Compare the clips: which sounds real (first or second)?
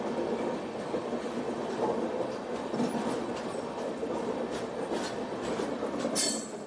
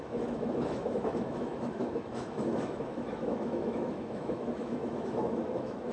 first